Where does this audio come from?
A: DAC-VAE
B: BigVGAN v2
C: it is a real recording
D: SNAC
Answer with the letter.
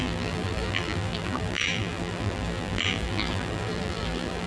B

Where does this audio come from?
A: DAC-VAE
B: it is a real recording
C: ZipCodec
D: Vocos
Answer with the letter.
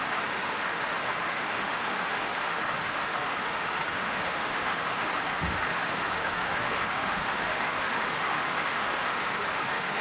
A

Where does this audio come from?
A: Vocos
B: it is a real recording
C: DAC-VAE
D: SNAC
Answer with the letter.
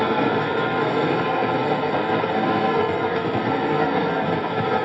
D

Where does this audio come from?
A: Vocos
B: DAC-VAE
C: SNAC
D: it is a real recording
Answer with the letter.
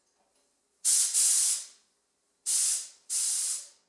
D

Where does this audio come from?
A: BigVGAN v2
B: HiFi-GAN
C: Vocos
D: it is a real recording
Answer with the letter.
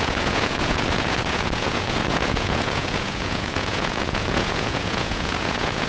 C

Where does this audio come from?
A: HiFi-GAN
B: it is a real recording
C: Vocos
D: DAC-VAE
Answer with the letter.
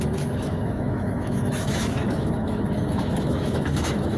D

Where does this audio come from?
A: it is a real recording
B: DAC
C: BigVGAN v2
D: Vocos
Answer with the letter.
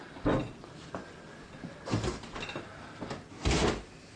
A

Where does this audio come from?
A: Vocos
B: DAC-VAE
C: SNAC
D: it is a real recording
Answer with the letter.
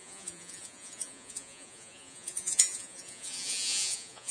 A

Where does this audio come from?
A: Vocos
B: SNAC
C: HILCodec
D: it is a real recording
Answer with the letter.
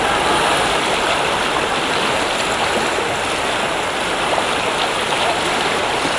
D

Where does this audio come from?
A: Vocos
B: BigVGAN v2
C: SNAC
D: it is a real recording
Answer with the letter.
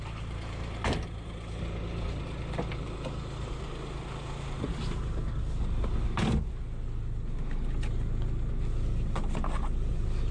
D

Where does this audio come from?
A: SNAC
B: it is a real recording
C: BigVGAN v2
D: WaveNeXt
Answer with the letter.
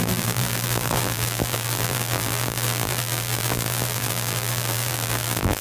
C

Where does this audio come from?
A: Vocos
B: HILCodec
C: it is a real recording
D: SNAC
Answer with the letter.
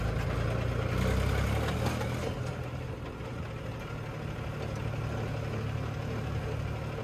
C